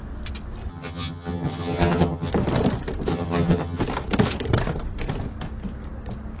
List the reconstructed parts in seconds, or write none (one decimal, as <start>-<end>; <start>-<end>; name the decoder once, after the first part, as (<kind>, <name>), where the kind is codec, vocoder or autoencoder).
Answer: 0.7-2.3 (vocoder, HiFi-GAN); 3.1-3.8